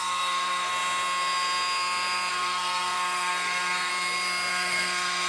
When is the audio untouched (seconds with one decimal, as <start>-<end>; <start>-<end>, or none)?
0.7-2.3; 3.9-4.5